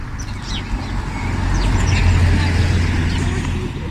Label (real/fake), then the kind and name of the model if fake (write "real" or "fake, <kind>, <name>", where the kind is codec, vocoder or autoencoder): real